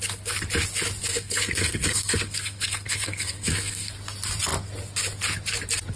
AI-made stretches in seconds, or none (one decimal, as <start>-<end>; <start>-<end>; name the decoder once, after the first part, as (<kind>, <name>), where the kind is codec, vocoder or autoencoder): 1.1-3.9 (codec, SNAC)